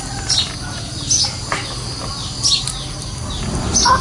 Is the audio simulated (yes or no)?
no